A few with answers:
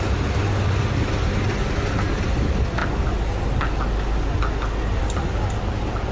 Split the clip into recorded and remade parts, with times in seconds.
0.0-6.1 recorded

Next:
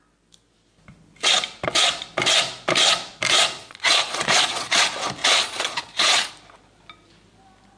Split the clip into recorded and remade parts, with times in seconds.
0.0-3.6 recorded; 3.6-4.8 remade; 4.8-5.2 recorded; 5.2-6.3 remade; 6.3-7.8 recorded

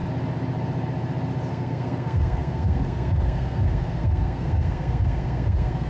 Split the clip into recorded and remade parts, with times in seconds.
0.0-1.5 recorded; 1.5-5.9 remade